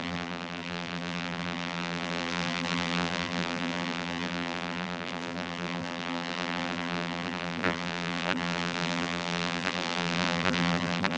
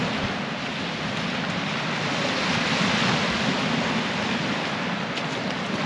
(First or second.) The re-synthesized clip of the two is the first